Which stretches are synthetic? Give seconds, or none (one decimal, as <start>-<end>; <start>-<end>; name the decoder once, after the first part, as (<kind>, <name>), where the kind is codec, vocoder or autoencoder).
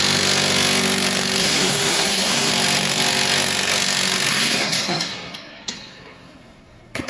1.4-2.5 (codec, SNAC); 4.3-7.1